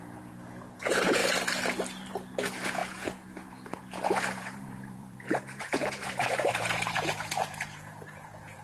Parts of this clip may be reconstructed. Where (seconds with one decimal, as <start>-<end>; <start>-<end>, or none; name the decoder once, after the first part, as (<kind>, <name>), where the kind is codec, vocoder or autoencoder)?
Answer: 0.0-1.2 (vocoder, Vocos); 2.1-8.6